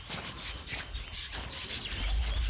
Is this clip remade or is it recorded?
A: recorded